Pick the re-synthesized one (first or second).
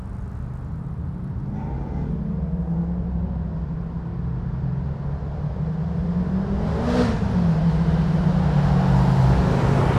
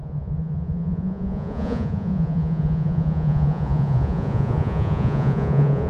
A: second